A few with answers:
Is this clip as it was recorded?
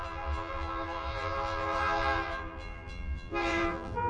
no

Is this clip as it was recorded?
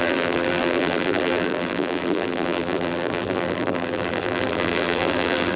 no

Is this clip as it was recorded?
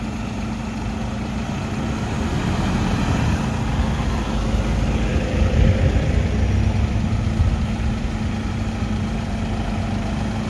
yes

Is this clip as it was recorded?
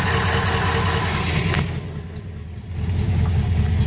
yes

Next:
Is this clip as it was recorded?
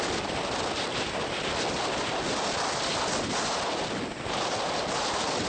yes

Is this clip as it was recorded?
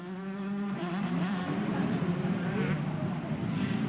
no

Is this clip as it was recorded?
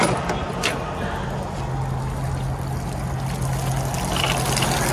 yes